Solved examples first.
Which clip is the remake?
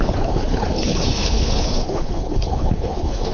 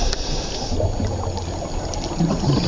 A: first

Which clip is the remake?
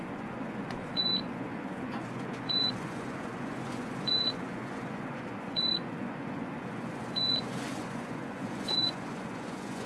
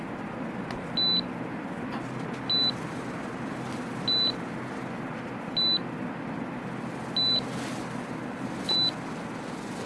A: first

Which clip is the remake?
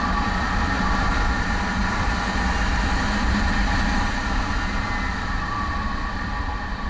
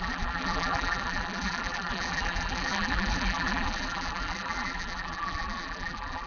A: second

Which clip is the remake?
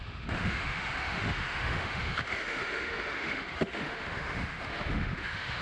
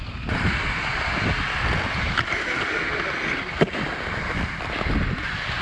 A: first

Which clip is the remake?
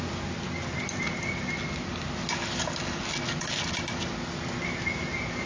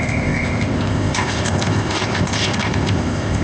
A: second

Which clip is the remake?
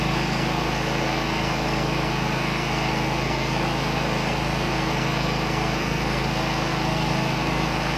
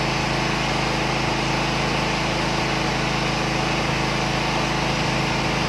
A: first